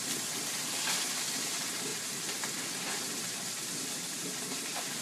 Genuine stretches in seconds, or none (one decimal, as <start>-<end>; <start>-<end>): 0.0-5.0